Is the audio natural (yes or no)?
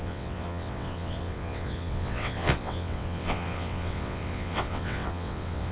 no